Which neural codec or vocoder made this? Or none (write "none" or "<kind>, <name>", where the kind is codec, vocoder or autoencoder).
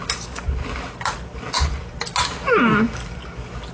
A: none